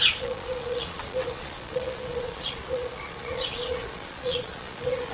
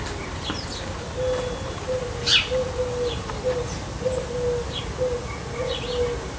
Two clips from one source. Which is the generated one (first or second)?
first